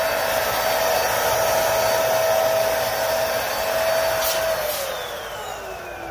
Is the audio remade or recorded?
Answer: recorded